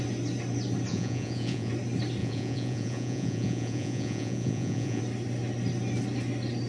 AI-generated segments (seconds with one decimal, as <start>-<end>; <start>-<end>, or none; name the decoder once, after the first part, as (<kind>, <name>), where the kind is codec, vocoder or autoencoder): 0.9-1.7 (vocoder, Vocos); 2.2-5.0

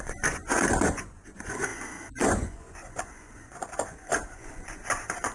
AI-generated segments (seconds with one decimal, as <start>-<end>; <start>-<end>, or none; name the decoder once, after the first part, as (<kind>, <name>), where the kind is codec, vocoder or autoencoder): 0.0-5.3 (vocoder, Vocos)

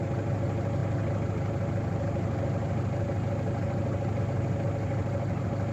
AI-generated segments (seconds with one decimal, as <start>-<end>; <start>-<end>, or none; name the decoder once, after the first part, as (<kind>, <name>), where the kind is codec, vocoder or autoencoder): none

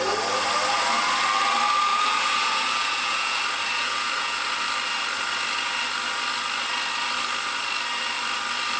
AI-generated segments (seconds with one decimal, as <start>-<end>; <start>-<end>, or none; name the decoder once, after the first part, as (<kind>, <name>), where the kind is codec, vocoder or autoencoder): 1.9-3.4 (vocoder, Vocos); 3.8-4.4

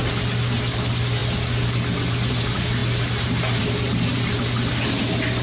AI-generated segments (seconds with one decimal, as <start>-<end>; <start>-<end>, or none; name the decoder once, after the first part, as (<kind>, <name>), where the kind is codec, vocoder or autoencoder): none

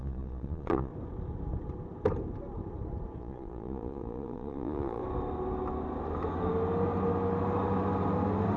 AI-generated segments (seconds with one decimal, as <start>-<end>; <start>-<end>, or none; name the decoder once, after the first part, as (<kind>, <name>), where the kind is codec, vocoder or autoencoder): 0.0-0.9 (vocoder, Vocos); 3.2-5.0

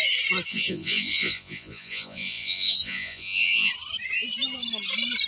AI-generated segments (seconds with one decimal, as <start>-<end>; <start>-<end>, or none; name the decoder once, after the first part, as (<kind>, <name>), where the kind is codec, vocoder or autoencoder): 0.5-3.7 (vocoder, Vocos)